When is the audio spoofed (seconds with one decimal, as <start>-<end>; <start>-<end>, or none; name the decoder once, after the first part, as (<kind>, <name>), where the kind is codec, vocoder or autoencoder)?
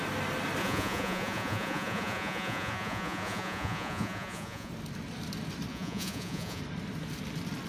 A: 0.6-4.7 (vocoder, Vocos); 5.7-6.6